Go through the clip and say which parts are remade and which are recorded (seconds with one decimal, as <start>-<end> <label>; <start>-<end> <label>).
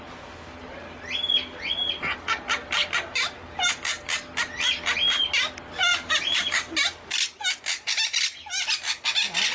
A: 0.0-5.9 recorded; 5.9-6.5 remade; 6.5-9.5 recorded